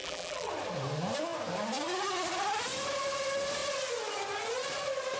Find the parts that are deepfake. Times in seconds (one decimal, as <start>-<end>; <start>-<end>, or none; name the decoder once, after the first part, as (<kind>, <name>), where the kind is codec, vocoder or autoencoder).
0.0-0.5 (vocoder, BigVGAN v2)